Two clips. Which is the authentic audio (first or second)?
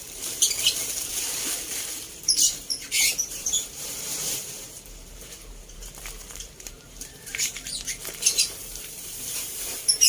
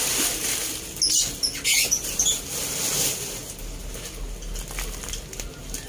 second